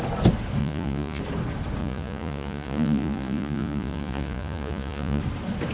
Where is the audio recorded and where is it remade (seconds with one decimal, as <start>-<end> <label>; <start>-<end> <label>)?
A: 0.0-0.6 recorded; 0.6-1.2 remade; 1.2-1.8 recorded; 1.8-5.2 remade; 5.2-5.7 recorded